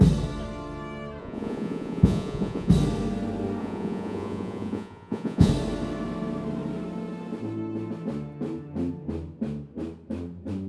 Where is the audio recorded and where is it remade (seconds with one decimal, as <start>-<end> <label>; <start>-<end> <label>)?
0.0-1.2 recorded; 1.2-2.7 remade; 2.7-3.6 recorded; 3.6-5.5 remade; 5.5-10.7 recorded